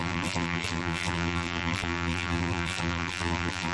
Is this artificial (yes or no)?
yes